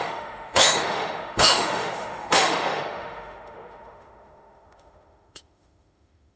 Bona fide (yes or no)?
no